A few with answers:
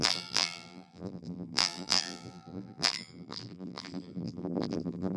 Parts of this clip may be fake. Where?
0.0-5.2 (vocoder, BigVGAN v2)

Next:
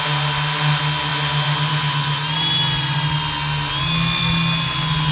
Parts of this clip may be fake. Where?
none

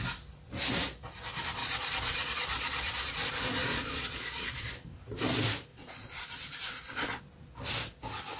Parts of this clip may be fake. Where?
1.6-3.3 (vocoder, Vocos); 3.7-4.7; 5.7-7.2

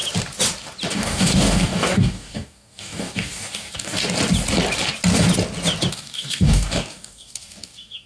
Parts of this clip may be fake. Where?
0.9-4.0 (codec, DAC); 5.9-8.1